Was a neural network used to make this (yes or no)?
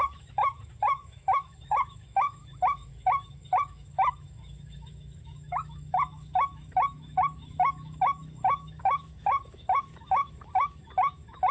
yes